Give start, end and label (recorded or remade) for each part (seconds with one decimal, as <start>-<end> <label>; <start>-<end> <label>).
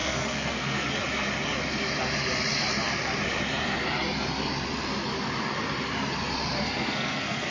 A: 0.0-0.9 remade; 0.9-6.6 recorded; 6.6-7.5 remade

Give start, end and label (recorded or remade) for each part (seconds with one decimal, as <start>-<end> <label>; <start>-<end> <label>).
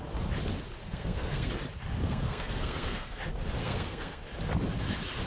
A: 0.0-0.8 recorded; 0.8-1.5 remade; 1.5-2.0 recorded; 2.0-3.2 remade; 3.2-3.6 recorded; 3.6-4.2 remade; 4.2-5.3 recorded